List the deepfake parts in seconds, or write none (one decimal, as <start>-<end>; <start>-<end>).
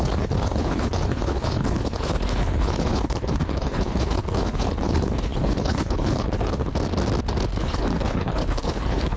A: 0.0-6.7; 7.6-9.2